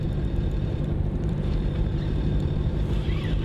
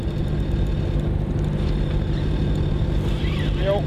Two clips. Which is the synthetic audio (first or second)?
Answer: first